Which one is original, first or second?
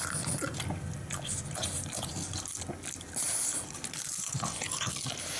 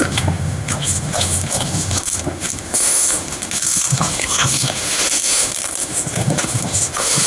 first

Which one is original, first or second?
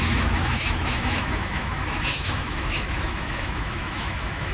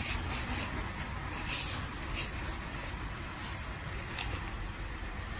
second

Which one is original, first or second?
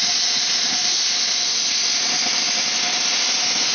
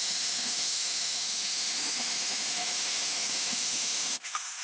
first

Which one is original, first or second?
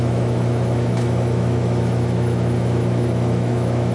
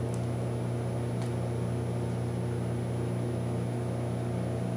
second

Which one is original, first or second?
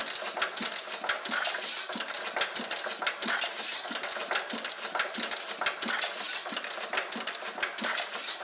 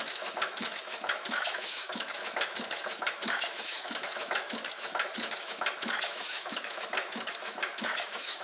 first